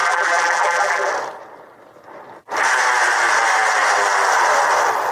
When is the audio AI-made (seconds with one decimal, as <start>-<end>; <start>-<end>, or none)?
0.0-1.1